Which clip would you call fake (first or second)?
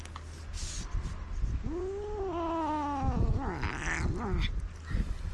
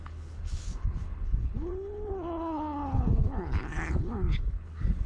second